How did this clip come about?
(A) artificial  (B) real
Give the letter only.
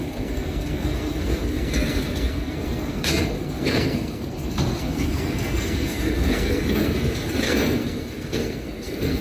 A